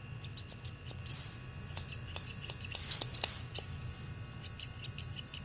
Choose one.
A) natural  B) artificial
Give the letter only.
A